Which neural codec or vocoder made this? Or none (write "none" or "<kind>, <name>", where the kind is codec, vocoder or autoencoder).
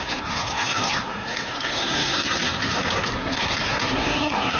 codec, SNAC